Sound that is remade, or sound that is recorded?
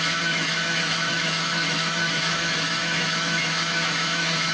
remade